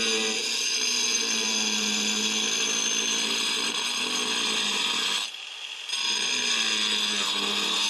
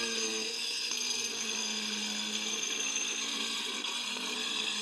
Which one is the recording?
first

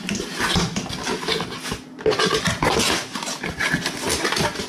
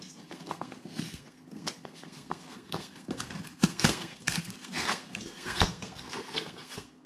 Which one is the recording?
first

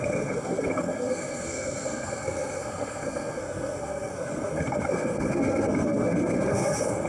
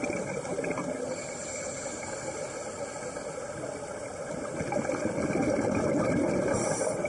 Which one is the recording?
second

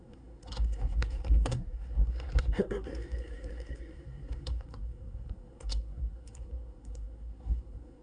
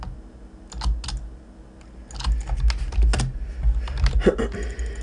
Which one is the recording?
second